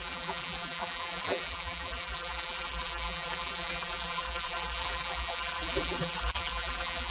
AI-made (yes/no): yes